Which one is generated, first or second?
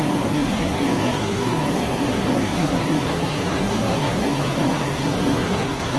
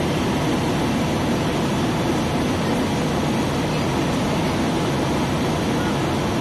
first